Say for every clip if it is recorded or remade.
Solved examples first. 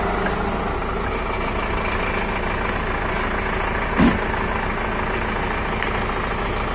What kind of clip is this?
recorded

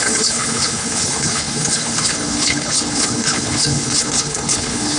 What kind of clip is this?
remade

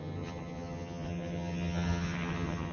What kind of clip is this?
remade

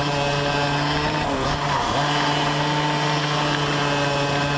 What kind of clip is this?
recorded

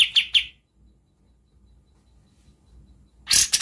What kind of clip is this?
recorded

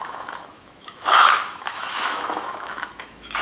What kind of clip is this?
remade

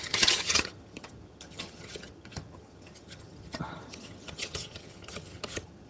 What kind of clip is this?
remade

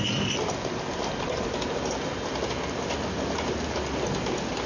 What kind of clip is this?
recorded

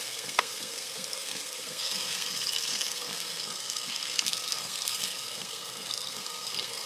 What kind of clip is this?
remade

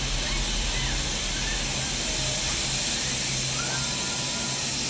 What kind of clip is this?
recorded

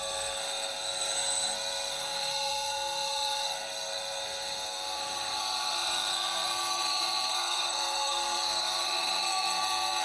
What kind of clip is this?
remade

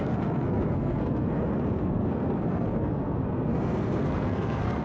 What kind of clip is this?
remade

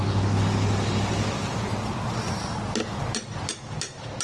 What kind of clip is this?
recorded